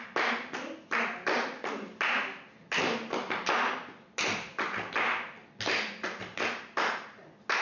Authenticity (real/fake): real